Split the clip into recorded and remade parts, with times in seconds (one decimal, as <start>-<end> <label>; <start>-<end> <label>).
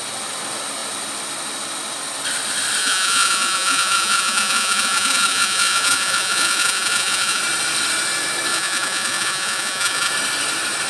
0.0-2.8 recorded; 2.8-7.4 remade; 7.4-8.5 recorded; 8.5-10.1 remade; 10.1-10.9 recorded